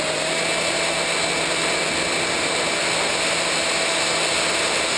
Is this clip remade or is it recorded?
recorded